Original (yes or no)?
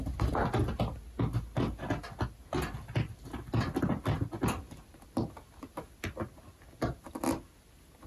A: yes